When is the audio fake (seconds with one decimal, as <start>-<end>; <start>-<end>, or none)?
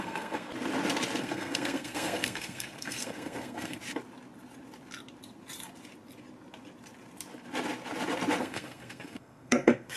0.0-0.5; 1.2-3.8; 8.4-10.0